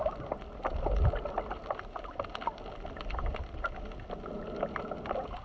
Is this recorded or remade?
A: recorded